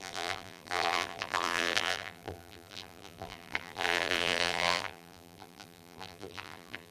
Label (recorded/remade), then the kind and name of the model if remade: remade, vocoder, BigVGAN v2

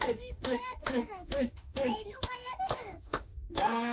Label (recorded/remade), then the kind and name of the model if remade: remade, autoencoder, DAC-VAE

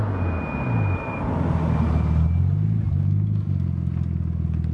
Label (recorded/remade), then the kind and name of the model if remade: recorded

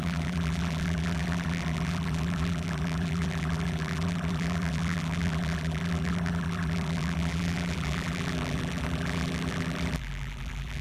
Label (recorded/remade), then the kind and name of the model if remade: remade, vocoder, BigVGAN v2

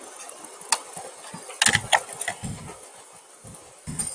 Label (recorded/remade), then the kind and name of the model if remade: recorded